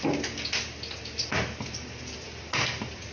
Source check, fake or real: real